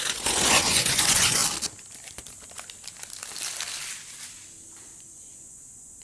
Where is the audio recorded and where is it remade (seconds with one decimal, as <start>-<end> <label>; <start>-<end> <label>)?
0.0-1.4 remade; 1.4-5.0 recorded; 5.0-6.0 remade